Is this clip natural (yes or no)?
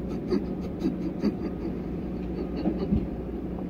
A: no